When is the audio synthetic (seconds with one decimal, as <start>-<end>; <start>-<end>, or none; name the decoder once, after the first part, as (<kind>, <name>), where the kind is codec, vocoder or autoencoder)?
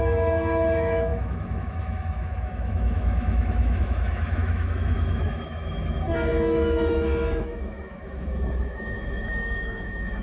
0.0-10.2 (autoencoder, DAC-VAE)